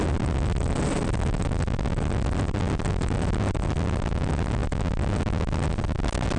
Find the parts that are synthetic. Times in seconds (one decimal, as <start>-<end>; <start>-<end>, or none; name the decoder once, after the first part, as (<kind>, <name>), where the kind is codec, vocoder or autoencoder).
none

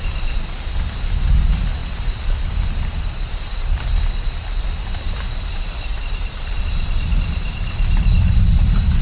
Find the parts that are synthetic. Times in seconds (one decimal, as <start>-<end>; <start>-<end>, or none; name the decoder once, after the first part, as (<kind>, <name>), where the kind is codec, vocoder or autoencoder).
1.8-4.9 (vocoder, BigVGAN v2); 5.9-6.6

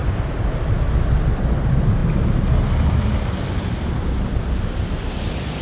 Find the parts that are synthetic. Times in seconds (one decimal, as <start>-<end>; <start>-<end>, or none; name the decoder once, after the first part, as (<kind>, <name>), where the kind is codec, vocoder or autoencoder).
none

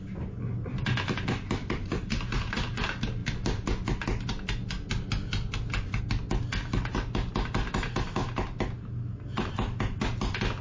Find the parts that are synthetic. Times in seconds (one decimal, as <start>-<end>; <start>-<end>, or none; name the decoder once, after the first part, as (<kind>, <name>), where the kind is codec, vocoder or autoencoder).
1.6-2.6 (vocoder, BigVGAN v2)

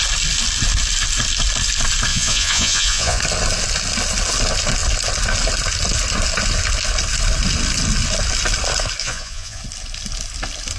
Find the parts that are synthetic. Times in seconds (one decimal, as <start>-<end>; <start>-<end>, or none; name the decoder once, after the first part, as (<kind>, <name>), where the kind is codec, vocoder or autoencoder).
2.1-3.2 (vocoder, Vocos); 9.0-9.6

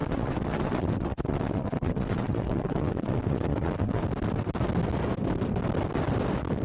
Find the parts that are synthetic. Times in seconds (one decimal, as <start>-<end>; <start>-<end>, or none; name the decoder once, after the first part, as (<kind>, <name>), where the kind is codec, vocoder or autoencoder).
0.0-4.0 (vocoder, WaveNeXt)

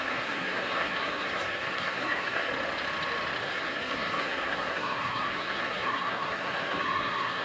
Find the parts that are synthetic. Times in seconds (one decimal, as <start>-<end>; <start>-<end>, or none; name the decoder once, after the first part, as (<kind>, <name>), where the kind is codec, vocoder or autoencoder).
0.0-2.5 (codec, SNAC); 3.4-7.4

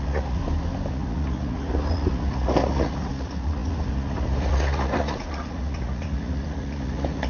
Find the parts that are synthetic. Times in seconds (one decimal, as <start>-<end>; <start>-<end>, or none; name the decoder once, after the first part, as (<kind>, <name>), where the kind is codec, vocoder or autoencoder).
0.0-0.4 (vocoder, Vocos); 0.9-7.3